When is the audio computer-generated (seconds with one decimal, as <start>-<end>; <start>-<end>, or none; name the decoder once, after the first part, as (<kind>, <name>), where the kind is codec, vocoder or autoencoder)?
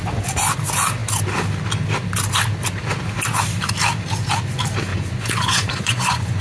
4.9-6.4 (vocoder, Vocos)